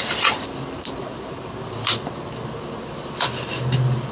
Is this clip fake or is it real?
fake